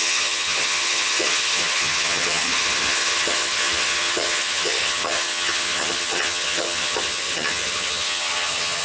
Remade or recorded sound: remade